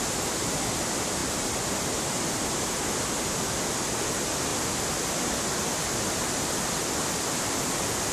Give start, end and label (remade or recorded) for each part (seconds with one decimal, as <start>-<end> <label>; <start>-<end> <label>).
0.0-8.1 recorded